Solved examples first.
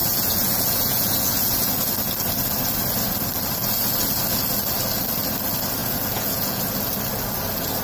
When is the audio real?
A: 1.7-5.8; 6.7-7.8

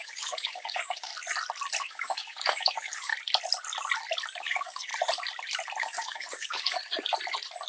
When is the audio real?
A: 1.1-1.8; 3.1-4.4; 4.9-5.8; 6.8-7.7

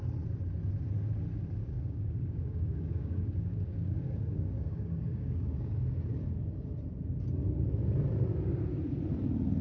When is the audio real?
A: 0.0-1.6; 6.1-9.6

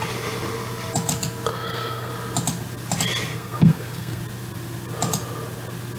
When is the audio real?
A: 0.0-1.5; 2.1-3.3; 4.2-6.0

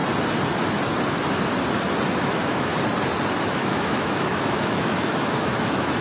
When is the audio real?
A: 0.0-2.2; 2.7-3.4